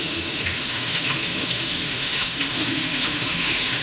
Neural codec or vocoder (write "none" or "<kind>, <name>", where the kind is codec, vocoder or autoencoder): autoencoder, DAC-VAE